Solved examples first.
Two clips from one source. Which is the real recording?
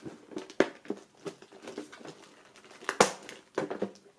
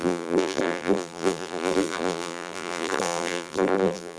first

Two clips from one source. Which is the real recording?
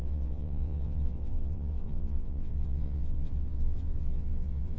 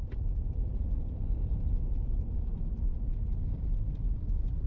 second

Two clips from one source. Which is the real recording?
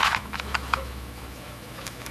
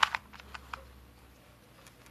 second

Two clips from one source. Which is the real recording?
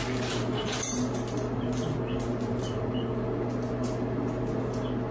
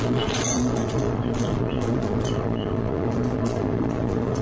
first